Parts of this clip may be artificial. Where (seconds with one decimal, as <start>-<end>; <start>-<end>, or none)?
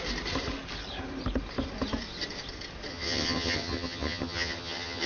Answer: 2.9-5.1